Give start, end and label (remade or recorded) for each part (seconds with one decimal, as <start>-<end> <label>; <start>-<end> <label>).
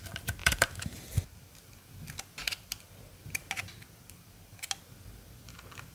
0.0-0.4 recorded; 0.4-1.0 remade; 1.0-5.9 recorded